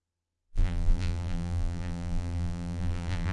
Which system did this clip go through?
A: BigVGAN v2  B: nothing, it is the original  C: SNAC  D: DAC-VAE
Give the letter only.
A